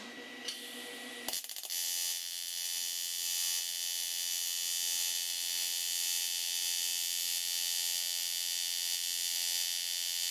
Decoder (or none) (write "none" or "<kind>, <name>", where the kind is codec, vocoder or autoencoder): none